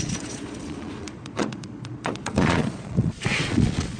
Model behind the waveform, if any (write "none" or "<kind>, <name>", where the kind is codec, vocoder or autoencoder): vocoder, Vocos